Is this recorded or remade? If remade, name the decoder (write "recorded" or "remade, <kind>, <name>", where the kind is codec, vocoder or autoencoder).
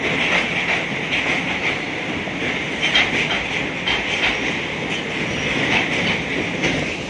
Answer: recorded